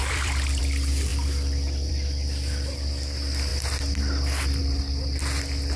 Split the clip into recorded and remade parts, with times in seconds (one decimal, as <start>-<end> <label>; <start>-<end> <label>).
0.0-0.6 remade; 0.6-5.8 recorded